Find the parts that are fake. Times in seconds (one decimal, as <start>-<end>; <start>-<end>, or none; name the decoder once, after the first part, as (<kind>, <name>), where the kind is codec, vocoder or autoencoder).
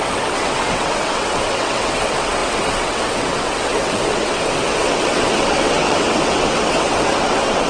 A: 0.0-7.7 (vocoder, WaveNeXt)